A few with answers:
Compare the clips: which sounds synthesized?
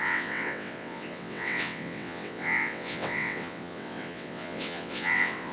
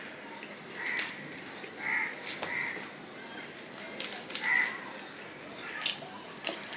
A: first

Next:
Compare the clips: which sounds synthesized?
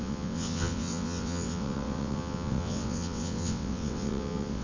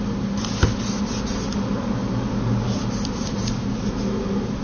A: first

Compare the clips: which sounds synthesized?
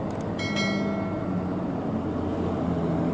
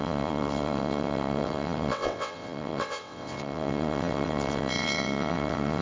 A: second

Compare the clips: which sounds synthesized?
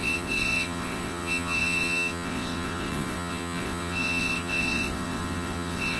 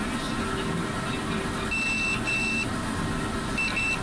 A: first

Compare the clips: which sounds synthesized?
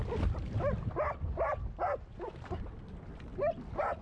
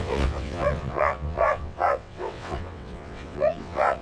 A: second